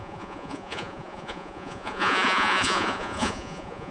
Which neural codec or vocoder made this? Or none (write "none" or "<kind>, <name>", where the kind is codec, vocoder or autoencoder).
vocoder, Vocos